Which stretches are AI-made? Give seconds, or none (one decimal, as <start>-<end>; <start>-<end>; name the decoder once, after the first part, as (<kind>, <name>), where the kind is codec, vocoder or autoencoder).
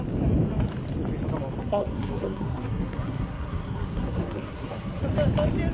1.6-5.0 (codec, SNAC)